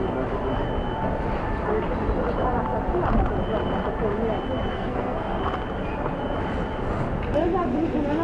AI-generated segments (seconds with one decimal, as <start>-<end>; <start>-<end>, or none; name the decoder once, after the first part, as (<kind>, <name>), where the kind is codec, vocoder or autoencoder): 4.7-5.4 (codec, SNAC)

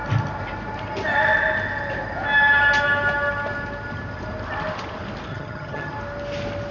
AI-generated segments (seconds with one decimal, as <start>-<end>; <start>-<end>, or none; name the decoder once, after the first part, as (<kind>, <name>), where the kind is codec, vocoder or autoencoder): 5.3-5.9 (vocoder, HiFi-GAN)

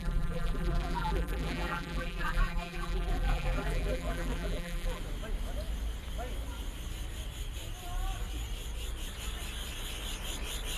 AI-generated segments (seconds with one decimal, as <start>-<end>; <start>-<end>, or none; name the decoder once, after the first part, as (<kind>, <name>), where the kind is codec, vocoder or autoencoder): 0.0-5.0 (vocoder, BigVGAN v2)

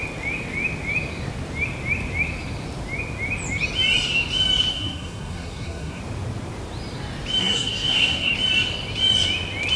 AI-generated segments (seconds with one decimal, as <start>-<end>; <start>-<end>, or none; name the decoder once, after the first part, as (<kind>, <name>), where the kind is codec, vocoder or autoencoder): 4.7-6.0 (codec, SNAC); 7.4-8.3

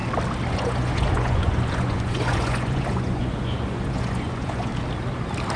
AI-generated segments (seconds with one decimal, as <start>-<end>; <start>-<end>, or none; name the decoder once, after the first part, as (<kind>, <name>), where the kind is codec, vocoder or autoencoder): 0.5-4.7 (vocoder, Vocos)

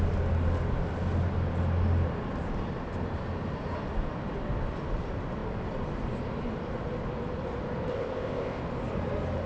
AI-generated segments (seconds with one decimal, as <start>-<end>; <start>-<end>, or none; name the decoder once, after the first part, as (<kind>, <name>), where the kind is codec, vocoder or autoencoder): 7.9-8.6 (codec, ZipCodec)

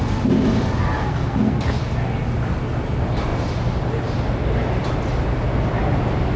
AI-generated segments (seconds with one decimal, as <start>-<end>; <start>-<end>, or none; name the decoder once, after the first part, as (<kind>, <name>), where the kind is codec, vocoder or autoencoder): 1.0-1.8 (codec, SNAC)

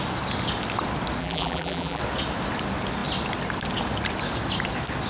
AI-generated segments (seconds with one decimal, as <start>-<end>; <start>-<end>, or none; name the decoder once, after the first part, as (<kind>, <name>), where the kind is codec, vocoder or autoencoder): 1.2-2.0 (vocoder, BigVGAN v2)